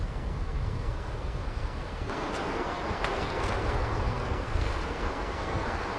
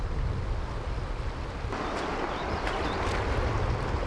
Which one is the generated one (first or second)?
first